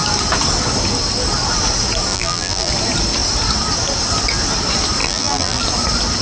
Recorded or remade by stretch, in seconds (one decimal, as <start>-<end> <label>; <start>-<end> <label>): 0.0-2.1 recorded; 2.1-2.7 remade; 2.7-5.0 recorded; 5.0-5.6 remade; 5.6-6.2 recorded